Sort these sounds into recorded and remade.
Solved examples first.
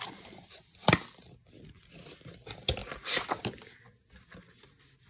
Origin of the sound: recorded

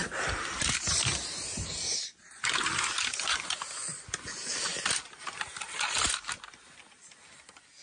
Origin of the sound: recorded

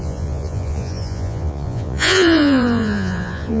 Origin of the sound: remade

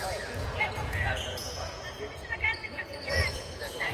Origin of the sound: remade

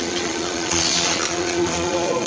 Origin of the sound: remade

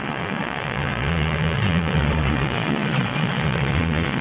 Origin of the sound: remade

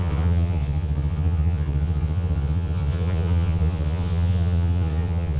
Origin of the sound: remade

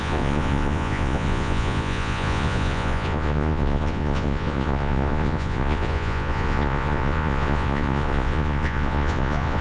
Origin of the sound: remade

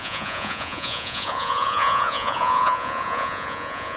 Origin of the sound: remade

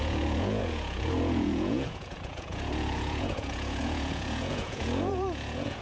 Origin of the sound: remade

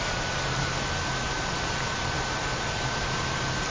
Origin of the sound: recorded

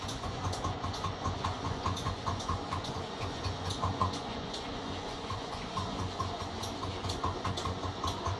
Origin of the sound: remade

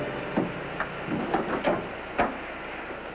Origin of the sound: recorded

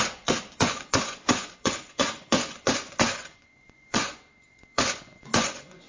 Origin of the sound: remade